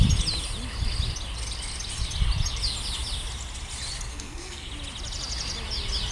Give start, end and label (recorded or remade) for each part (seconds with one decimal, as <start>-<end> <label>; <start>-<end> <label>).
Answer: 0.0-4.1 recorded; 4.1-4.7 remade; 4.7-6.1 recorded